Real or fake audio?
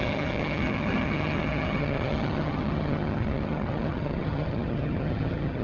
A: fake